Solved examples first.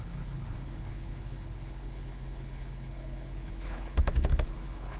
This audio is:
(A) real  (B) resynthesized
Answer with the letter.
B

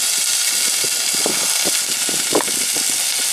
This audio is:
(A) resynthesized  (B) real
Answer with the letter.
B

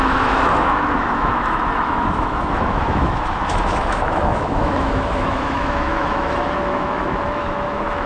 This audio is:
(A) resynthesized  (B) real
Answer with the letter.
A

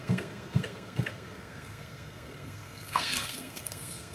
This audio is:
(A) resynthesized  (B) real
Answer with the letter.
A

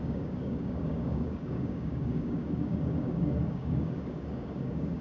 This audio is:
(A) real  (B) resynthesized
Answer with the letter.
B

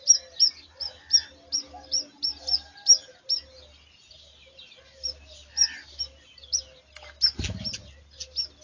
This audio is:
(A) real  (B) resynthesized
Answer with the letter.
A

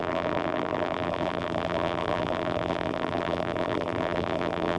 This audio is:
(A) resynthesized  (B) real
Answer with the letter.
A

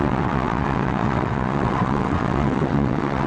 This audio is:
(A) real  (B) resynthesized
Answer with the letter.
B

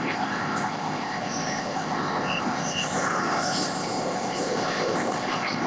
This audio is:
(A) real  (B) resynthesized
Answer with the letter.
B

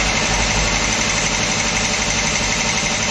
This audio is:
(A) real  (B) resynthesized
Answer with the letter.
A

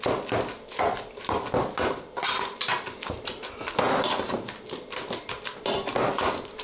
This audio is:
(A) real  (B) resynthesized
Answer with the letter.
A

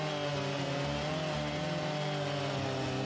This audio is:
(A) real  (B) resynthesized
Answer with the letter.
A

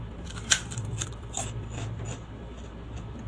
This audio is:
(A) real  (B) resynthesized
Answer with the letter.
A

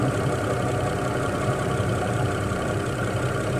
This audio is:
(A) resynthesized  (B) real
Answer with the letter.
A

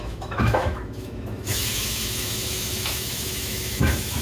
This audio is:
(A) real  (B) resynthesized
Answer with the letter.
B